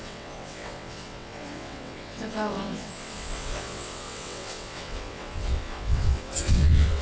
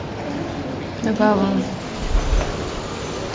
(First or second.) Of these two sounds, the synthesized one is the first